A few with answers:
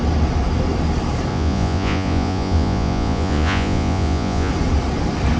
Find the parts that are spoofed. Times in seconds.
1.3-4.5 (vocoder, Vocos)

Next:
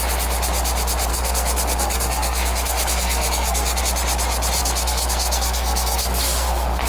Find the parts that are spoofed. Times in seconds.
1.1-3.8 (codec, SNAC); 4.6-6.9

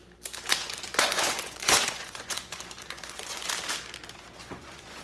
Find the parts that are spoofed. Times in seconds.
0.5-3.5 (vocoder, Vocos); 4.4-5.0

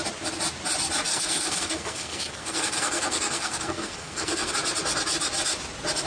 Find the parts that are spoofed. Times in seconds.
1.1-4.5 (codec, SNAC)